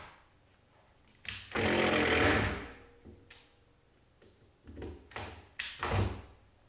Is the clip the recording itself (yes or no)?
yes